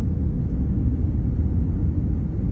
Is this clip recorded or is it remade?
recorded